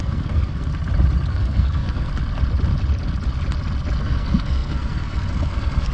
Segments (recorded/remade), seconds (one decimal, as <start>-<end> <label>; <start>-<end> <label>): 0.0-0.7 remade; 0.7-1.3 recorded; 1.3-2.1 remade; 2.1-4.0 recorded; 4.0-5.9 remade